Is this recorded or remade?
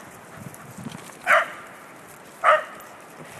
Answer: recorded